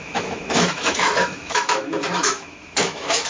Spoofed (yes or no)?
yes